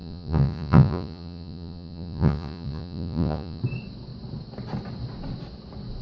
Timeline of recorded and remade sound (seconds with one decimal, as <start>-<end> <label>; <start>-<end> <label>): 0.0-3.6 remade; 3.6-6.0 recorded